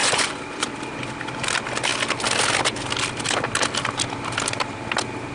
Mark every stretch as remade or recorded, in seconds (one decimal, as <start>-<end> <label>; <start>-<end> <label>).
0.0-0.7 remade; 0.7-5.3 recorded